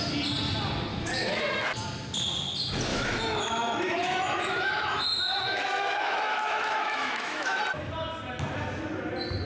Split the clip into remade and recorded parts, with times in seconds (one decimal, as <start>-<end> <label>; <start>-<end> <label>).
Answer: 0.0-0.9 recorded; 0.9-1.4 remade; 1.4-2.9 recorded; 2.9-7.6 remade; 7.6-9.4 recorded